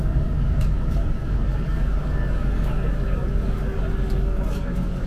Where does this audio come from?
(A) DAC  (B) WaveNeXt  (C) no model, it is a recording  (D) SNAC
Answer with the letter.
A